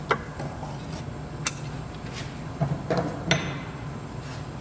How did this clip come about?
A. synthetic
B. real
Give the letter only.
B